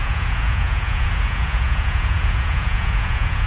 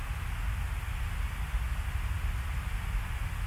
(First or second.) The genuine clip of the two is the second